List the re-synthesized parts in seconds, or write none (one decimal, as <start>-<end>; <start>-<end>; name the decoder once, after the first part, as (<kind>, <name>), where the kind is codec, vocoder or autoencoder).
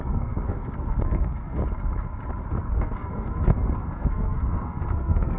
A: 0.0-1.6 (codec, SNAC); 2.5-5.4